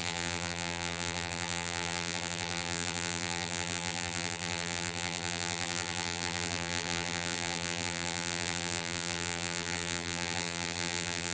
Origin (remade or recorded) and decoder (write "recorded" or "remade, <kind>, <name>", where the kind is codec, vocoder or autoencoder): remade, vocoder, BigVGAN v2